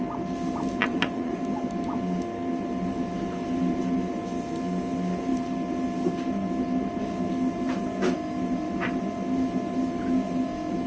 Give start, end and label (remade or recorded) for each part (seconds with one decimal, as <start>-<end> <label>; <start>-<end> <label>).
0.0-0.8 recorded; 0.8-1.4 remade; 1.4-10.9 recorded